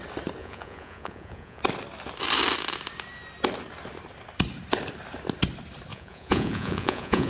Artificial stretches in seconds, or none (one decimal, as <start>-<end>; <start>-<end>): 0.4-1.6; 5.9-7.3